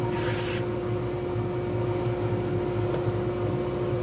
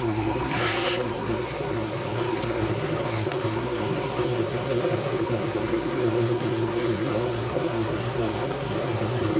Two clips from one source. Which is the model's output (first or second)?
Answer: second